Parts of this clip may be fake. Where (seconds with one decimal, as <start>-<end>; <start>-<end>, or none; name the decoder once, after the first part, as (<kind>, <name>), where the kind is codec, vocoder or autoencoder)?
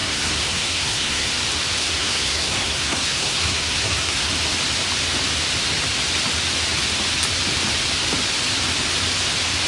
0.0-1.3 (codec, SNAC); 1.8-4.3